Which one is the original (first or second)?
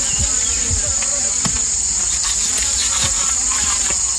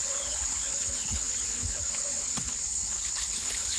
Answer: first